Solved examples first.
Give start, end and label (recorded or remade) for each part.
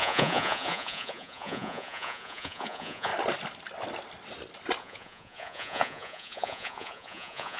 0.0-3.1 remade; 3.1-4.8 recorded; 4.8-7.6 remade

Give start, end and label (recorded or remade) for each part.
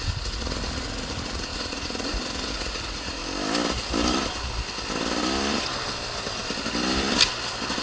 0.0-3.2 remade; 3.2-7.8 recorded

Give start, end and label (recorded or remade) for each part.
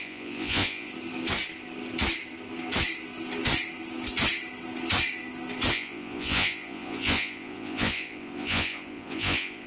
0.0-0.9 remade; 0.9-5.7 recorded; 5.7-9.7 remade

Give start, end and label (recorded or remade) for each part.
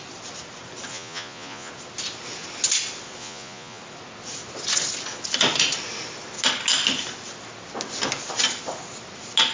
0.0-0.9 recorded; 0.9-1.7 remade; 1.7-3.2 recorded; 3.2-3.8 remade; 3.8-9.5 recorded